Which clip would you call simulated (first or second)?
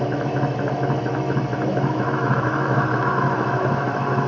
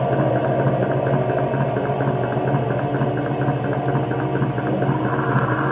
first